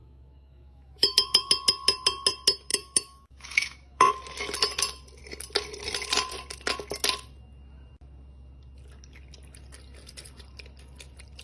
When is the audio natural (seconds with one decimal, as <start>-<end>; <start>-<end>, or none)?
1.5-2.7; 4.1-11.4